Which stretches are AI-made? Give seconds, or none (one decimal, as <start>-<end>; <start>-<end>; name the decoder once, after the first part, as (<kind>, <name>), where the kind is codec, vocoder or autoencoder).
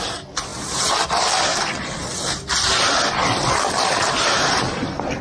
none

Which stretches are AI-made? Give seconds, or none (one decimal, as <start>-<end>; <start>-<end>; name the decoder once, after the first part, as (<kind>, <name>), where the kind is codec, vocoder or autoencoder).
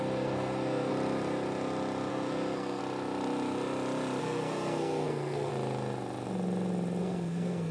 0.0-0.9 (codec, SNAC); 2.1-2.8; 4.2-5.5; 7.0-7.7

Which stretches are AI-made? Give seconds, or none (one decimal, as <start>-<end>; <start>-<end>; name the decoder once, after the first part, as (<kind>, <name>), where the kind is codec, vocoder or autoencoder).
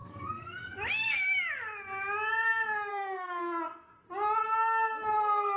0.0-0.6 (codec, SNAC); 2.9-3.4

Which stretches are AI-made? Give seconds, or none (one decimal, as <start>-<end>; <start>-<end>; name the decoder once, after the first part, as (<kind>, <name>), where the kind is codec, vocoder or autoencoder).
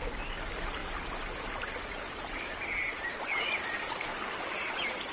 0.8-3.9 (vocoder, BigVGAN v2)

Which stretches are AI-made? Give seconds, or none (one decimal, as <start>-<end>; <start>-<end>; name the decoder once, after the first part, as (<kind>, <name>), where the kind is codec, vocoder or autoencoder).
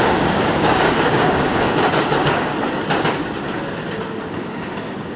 0.0-2.5 (codec, DAC); 4.3-5.2